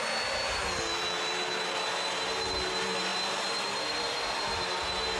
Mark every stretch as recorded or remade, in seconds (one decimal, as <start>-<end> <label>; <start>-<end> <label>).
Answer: 0.0-3.1 recorded; 3.1-4.5 remade; 4.5-5.2 recorded